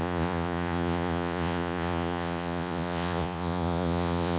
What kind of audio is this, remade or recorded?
remade